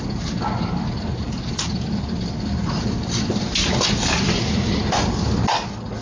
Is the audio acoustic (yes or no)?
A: yes